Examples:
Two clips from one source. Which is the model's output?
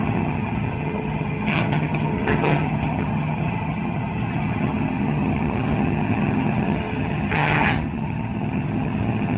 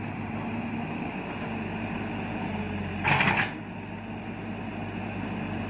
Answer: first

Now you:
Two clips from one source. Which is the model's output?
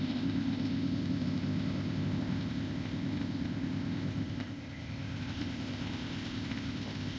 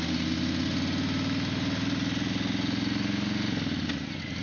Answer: first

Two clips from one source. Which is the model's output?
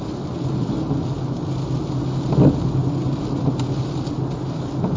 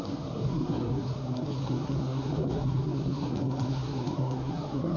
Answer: second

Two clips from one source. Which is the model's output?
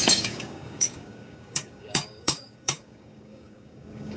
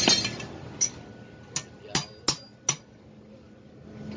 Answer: first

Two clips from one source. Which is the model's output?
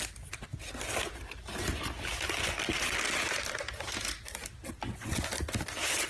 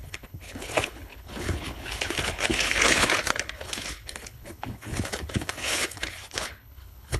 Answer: second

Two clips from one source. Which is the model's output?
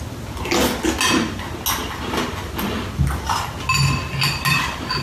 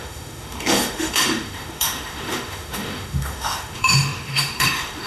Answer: second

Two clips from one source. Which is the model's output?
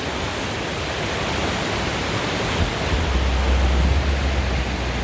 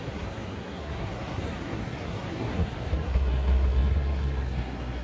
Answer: second